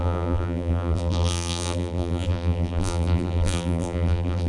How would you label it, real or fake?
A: fake